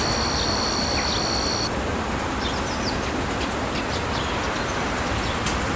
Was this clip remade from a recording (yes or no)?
no